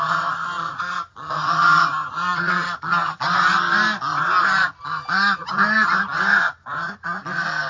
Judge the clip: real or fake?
real